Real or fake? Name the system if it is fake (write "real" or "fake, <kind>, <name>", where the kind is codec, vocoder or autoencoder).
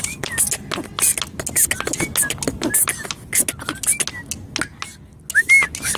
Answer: real